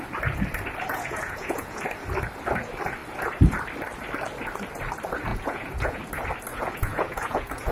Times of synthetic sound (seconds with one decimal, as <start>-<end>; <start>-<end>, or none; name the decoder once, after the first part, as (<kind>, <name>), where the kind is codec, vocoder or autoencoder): 0.9-1.8 (vocoder, Vocos); 5.3-6.0; 6.5-7.7